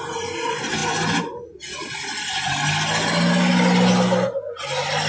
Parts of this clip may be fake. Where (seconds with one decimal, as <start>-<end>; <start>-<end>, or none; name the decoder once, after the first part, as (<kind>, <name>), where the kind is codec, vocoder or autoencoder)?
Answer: none